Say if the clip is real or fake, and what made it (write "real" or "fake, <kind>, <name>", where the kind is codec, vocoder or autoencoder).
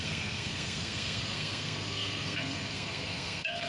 fake, codec, SNAC